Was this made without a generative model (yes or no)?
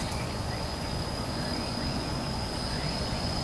no